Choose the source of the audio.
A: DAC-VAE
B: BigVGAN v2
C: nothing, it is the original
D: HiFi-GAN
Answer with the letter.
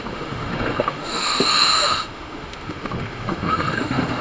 A